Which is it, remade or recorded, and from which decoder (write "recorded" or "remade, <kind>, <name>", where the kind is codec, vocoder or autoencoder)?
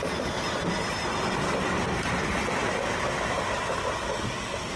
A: recorded